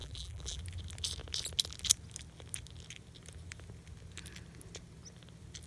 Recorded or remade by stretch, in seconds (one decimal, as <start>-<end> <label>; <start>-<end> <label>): 0.0-0.6 remade; 0.6-5.7 recorded